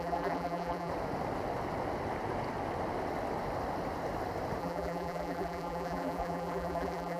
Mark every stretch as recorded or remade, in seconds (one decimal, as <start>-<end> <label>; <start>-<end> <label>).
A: 0.0-0.9 remade; 0.9-4.6 recorded; 4.6-7.2 remade